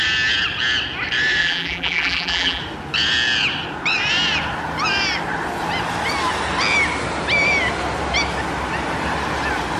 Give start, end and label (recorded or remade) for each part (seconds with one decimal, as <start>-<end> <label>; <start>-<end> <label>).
0.0-1.4 recorded; 1.4-2.6 remade; 2.6-9.8 recorded